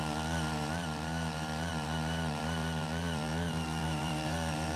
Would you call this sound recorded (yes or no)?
no